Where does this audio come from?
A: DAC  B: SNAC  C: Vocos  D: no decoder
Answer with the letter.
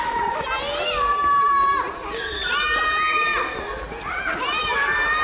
D